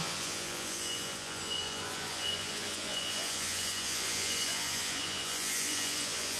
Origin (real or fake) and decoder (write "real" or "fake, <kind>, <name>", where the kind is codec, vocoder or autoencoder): fake, vocoder, Vocos